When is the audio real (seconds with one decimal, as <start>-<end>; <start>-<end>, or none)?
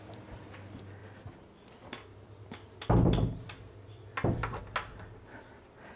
0.0-6.0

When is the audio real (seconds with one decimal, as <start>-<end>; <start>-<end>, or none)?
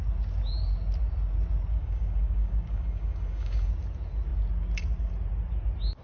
0.0-1.7; 3.7-6.0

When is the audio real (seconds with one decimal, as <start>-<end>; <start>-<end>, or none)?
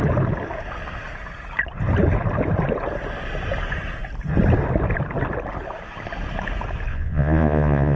0.0-6.9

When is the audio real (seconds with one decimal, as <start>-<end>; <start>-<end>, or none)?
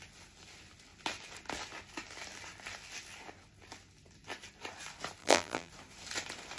0.0-5.2; 5.7-6.6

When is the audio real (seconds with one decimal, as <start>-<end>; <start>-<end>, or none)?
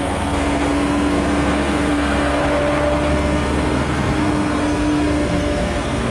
2.4-3.1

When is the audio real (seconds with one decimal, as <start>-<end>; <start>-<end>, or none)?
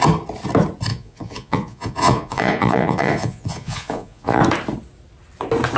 0.0-0.9; 4.4-5.8